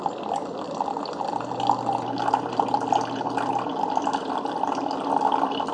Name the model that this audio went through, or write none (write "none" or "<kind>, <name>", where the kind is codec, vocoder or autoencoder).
none